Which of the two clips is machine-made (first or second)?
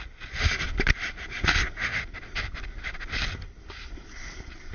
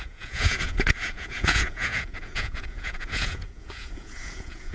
second